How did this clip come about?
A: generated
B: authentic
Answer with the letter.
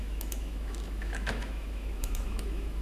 A